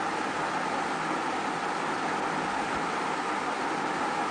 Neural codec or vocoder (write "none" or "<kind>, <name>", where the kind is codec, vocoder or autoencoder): none